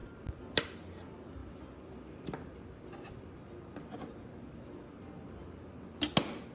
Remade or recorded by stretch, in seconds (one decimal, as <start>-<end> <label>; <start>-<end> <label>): 0.0-6.5 recorded